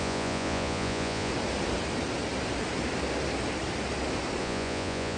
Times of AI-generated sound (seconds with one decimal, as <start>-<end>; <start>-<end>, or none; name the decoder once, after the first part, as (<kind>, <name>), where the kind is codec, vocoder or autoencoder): 0.0-1.3 (vocoder, Vocos); 4.4-5.2